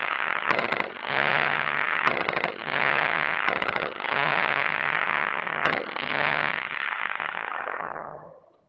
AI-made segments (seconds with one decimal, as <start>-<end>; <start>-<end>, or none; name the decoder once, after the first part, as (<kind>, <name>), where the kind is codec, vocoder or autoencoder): 0.0-8.7 (vocoder, HiFi-GAN)